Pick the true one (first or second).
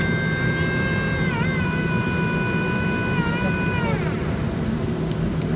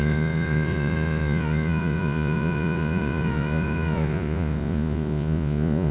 first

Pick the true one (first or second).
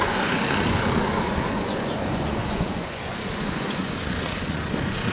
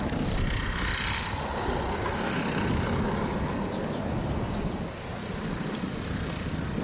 second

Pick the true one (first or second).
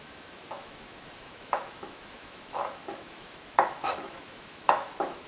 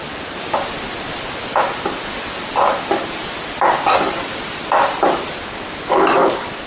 second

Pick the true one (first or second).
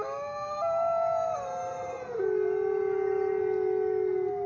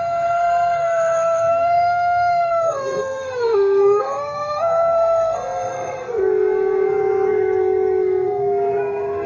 first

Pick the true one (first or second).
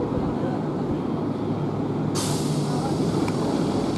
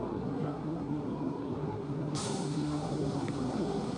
first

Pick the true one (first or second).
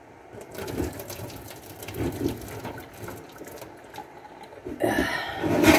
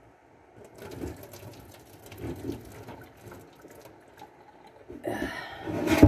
second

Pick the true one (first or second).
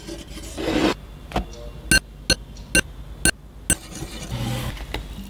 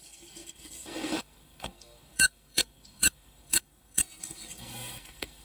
first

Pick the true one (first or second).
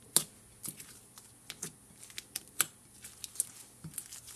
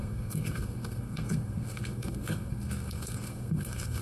first